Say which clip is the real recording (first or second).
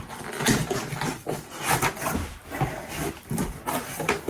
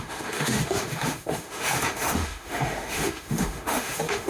first